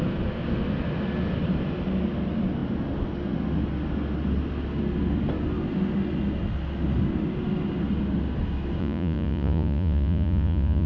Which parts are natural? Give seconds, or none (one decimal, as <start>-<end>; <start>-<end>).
0.0-8.8